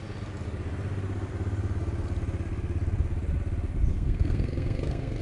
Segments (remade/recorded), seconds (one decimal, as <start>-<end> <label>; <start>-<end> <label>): 0.0-3.9 recorded; 3.9-5.2 remade